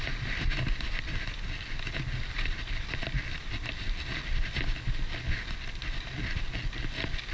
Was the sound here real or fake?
real